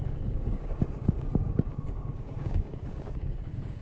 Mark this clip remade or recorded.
remade